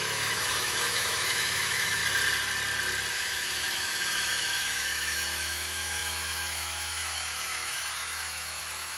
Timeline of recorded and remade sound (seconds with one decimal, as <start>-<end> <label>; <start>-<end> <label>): 0.0-2.0 remade; 2.0-3.1 recorded; 3.1-9.0 remade